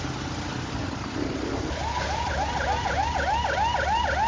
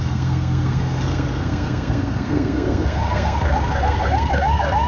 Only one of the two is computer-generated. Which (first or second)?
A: second